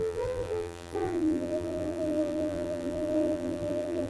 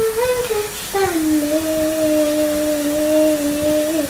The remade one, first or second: first